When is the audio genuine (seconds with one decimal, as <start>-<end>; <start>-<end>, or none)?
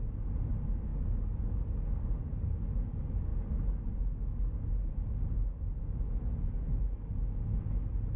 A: 0.0-8.2